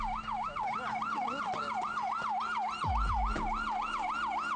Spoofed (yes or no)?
no